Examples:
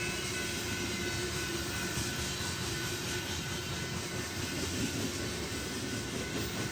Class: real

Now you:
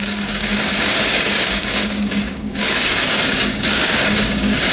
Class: fake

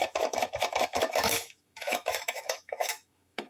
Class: fake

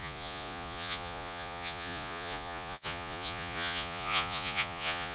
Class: fake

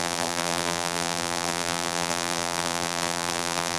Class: fake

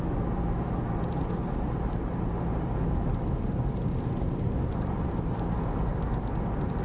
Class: real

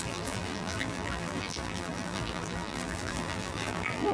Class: fake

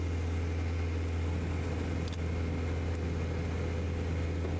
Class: real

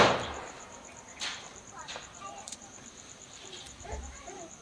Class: fake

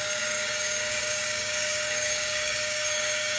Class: fake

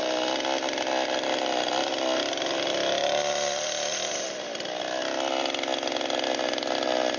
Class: real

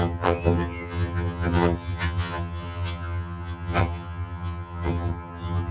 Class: fake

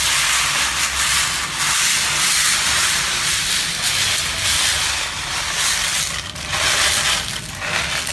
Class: real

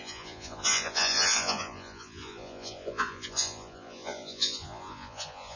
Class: fake